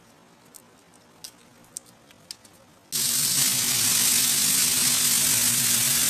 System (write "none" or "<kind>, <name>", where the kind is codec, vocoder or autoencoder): none